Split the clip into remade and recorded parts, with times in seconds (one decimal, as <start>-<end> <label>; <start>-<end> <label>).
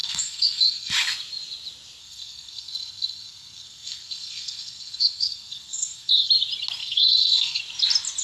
0.0-0.9 remade; 0.9-2.0 recorded; 2.0-6.3 remade; 6.3-6.8 recorded; 6.8-7.6 remade; 7.6-8.2 recorded